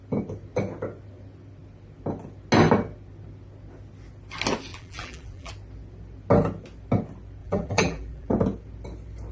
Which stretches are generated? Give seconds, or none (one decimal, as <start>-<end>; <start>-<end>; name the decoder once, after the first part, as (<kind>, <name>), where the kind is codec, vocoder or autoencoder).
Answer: 4.7-5.5 (vocoder, BigVGAN v2); 7.4-8.3